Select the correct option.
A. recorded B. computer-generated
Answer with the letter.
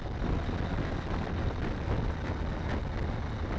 A